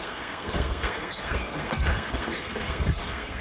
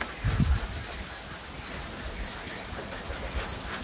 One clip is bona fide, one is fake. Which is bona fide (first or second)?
second